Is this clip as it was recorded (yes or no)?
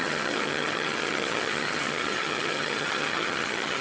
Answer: no